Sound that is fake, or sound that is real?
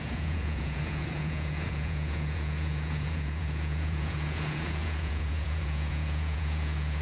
fake